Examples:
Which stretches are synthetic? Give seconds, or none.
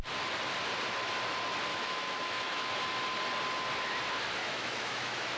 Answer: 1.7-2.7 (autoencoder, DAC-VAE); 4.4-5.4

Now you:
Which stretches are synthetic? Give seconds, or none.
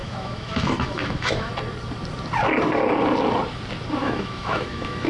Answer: 0.0-1.5 (autoencoder, DAC-VAE); 4.0-5.1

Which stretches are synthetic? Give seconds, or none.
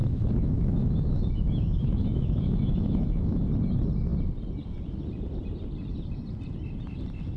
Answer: 0.0-3.5 (autoencoder, DAC-VAE)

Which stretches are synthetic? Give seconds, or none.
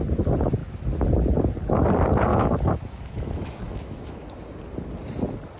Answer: 2.3-4.4 (autoencoder, DAC-VAE)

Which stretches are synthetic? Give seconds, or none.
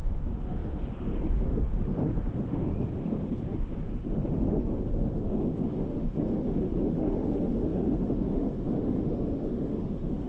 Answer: 0.0-10.3 (autoencoder, DAC-VAE)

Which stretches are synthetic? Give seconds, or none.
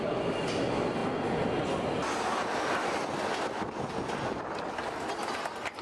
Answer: none